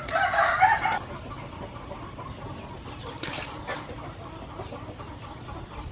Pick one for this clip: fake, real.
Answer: fake